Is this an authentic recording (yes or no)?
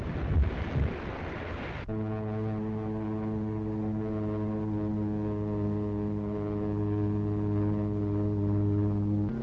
yes